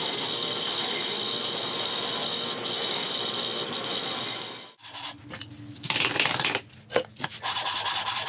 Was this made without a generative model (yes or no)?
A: yes